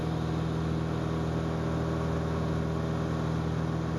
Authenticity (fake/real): real